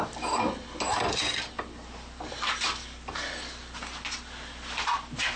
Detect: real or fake real